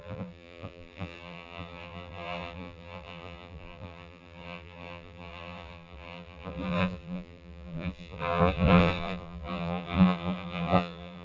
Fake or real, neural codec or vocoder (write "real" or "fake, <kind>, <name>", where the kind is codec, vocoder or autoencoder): fake, vocoder, BigVGAN v2